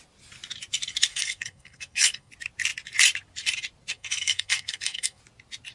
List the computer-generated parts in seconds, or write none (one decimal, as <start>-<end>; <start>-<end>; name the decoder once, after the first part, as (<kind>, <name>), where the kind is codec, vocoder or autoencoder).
1.1-2.3 (codec, SNAC); 3.9-5.2